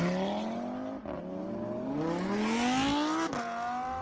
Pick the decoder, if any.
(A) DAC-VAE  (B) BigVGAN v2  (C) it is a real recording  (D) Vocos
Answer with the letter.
C